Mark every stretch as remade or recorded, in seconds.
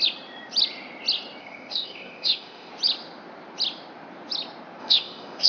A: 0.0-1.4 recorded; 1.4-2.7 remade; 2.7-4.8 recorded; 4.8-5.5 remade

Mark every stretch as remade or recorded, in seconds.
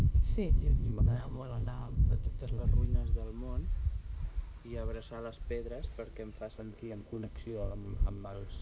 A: 0.0-2.6 remade; 2.6-6.5 recorded; 6.5-8.6 remade